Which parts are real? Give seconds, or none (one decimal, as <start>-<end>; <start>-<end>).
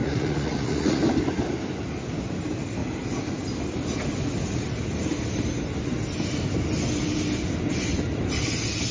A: 1.0-8.9